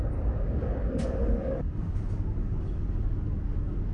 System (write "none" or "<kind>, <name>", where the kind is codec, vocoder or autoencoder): codec, DAC